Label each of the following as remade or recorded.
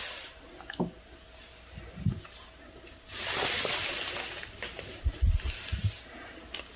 recorded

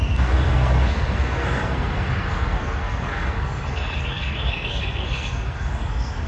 remade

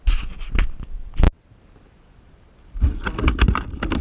recorded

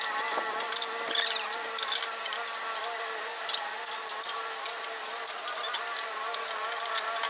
recorded